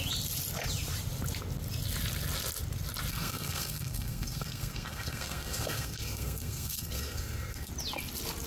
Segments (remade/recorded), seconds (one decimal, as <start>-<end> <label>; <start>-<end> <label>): 0.0-3.1 recorded; 3.1-7.7 remade; 7.7-8.5 recorded